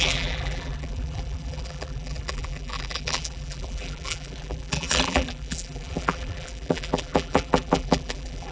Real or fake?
fake